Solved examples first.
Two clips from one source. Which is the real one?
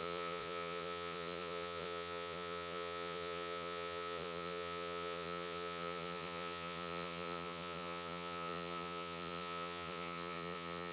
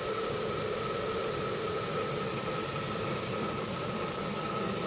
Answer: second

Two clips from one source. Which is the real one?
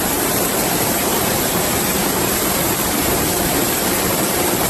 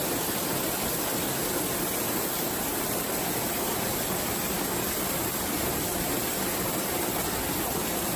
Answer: second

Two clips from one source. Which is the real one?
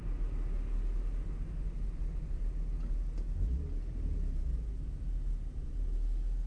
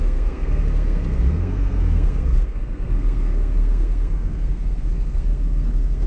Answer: first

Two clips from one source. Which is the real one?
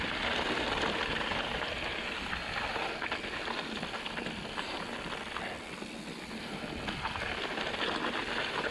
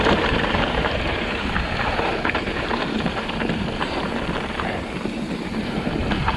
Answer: first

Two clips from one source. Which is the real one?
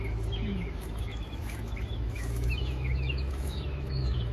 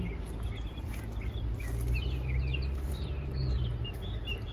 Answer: second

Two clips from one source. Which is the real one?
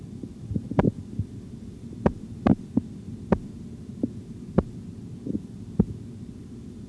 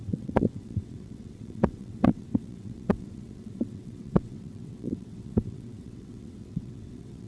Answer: first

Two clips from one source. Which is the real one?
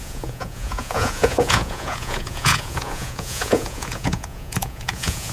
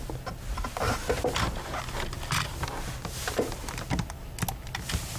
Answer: second